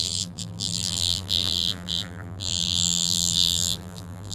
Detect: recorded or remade remade